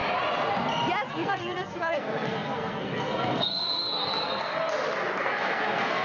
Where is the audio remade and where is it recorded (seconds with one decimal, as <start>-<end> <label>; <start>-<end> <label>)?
0.0-1.1 recorded; 1.1-4.5 remade; 4.5-5.2 recorded; 5.2-6.0 remade